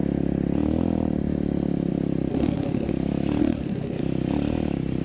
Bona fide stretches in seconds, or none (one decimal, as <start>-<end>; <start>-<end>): 0.0-2.3; 2.9-3.4; 4.0-5.0